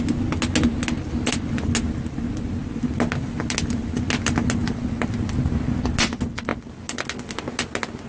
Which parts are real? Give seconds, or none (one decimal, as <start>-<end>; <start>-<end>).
0.0-8.1